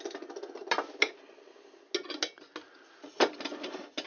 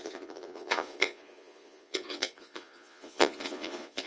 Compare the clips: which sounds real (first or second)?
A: first